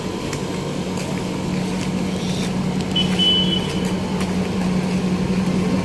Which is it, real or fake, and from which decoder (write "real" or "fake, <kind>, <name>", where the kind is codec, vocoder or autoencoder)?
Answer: real